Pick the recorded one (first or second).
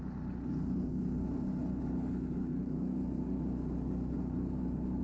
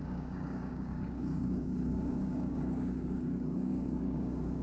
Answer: first